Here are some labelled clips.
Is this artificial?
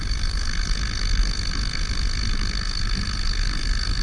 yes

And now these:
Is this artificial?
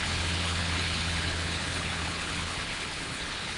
yes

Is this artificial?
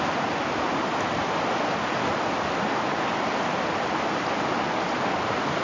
no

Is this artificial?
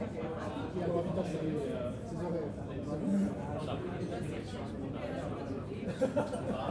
yes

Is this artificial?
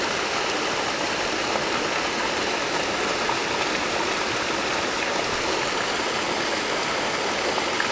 no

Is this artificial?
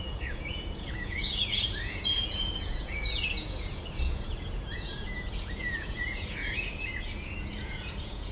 yes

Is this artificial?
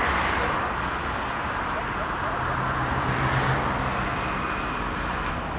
no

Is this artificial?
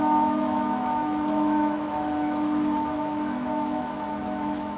yes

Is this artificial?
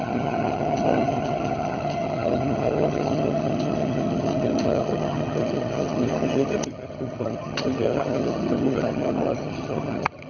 yes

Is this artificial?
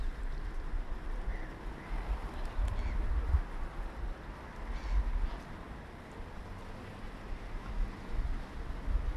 no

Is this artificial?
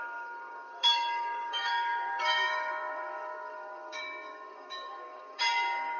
yes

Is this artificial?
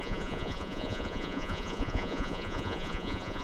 yes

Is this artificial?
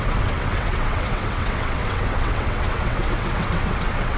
yes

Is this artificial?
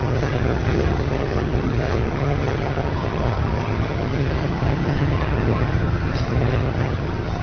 yes